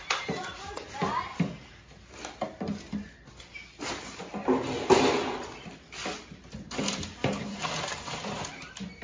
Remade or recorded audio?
recorded